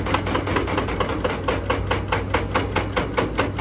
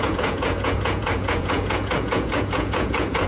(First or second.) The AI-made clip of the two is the second